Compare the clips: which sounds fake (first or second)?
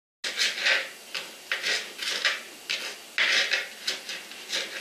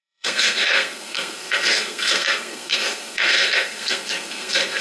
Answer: second